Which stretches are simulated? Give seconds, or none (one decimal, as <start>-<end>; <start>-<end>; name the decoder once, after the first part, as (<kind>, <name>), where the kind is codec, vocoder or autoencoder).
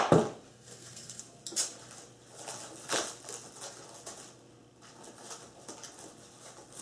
0.5-1.2 (codec, SNAC)